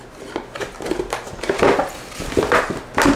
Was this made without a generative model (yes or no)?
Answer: yes